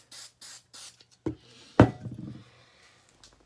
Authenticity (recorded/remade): recorded